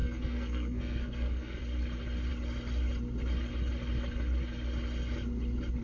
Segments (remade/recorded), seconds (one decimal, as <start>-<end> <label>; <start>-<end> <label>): 0.0-1.6 remade; 1.6-5.8 recorded